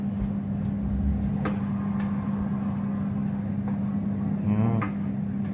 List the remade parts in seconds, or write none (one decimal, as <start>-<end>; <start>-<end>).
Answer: none